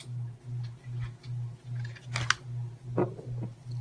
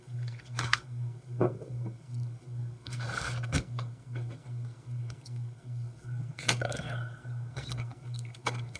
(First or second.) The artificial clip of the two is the second